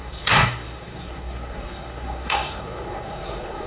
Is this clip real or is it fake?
fake